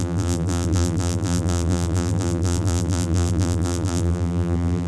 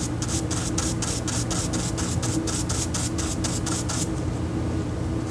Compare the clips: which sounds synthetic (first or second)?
first